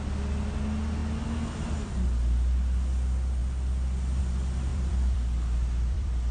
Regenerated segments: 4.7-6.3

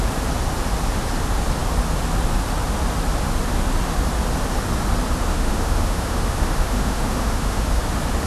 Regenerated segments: 5.3-7.8

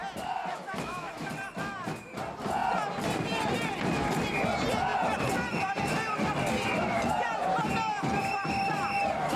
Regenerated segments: 0.5-1.3

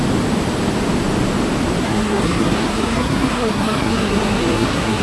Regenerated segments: 1.8-5.0

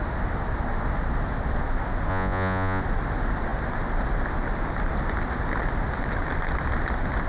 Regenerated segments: 2.1-2.8

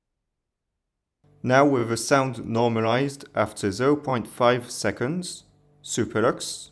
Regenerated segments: 1.8-3.1

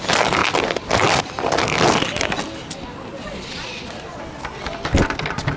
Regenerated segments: 3.2-4.2

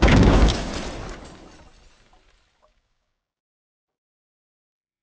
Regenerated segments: 0.0-0.7; 2.6-5.0